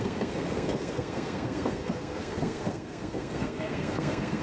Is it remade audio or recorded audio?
remade